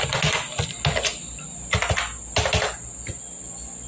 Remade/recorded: recorded